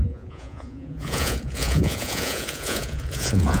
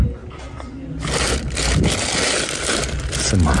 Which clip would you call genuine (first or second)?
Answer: second